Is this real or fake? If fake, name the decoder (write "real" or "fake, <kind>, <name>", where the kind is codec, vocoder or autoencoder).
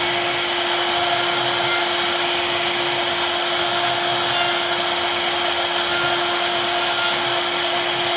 real